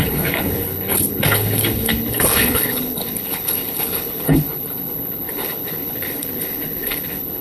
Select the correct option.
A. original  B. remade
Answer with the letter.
B